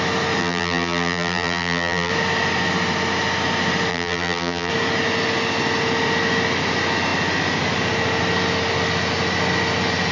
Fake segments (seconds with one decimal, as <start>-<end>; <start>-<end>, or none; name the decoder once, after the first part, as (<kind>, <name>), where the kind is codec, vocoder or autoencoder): 0.4-2.1 (vocoder, BigVGAN v2); 3.9-4.7